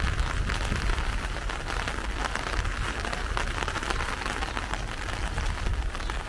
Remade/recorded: recorded